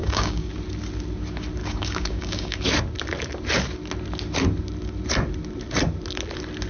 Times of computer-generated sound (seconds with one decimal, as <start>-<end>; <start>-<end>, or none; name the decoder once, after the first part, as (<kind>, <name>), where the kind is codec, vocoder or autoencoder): 0.0-0.5 (codec, DAC); 1.6-2.6